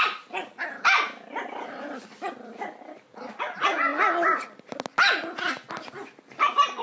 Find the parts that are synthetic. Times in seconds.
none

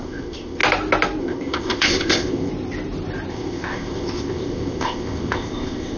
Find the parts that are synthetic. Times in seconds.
0.0-0.6 (codec, ZipCodec); 1.2-2.5; 3.3-6.0

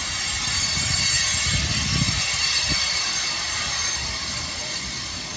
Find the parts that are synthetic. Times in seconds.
none

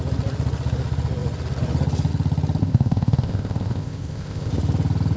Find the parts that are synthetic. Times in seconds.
2.6-4.5 (codec, ZipCodec)